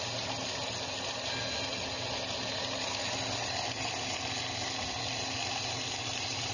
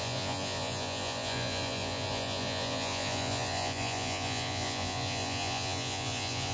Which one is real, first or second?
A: first